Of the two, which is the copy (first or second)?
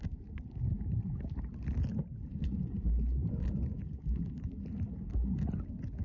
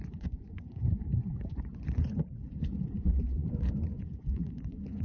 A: second